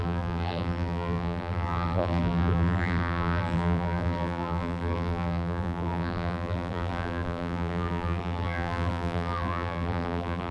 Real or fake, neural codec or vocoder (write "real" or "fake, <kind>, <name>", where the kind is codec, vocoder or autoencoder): fake, vocoder, BigVGAN v2